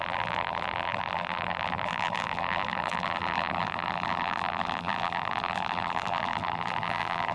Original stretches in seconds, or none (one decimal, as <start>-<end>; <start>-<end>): none